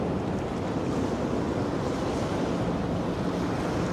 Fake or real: real